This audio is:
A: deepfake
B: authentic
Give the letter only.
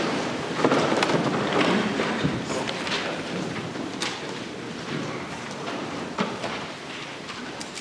A